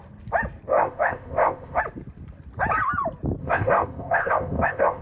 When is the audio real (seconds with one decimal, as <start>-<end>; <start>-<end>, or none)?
0.0-0.7; 1.8-3.4